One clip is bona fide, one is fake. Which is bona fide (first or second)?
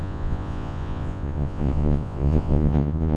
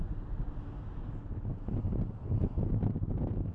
second